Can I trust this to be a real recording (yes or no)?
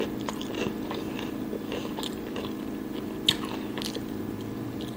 yes